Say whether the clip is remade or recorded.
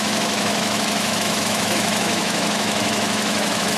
remade